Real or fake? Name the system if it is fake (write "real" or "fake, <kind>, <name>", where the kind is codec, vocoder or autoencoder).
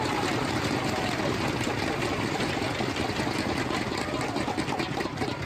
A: real